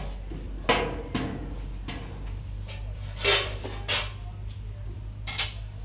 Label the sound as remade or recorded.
recorded